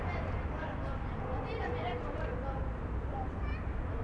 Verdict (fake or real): real